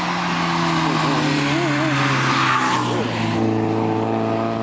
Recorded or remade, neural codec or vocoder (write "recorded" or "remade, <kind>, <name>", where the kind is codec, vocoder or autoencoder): recorded